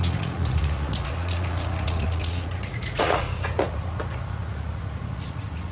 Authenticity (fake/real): fake